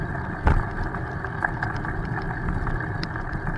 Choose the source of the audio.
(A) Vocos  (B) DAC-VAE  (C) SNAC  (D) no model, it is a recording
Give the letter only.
D